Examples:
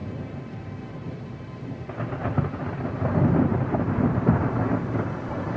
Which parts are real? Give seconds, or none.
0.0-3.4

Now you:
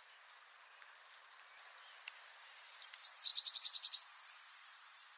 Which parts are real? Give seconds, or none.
0.0-5.2

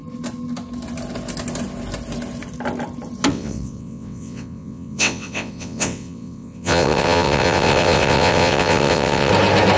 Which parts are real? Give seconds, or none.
0.0-3.3; 9.3-9.8

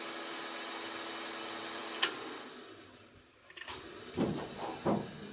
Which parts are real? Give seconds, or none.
0.0-5.3

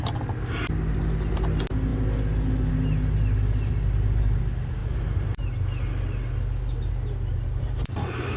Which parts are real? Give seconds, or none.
0.0-4.8; 5.6-7.3

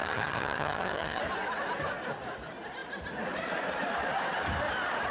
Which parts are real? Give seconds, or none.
1.2-5.1

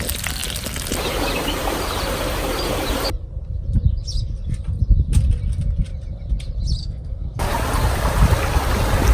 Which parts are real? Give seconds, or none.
0.0-6.8; 7.5-9.1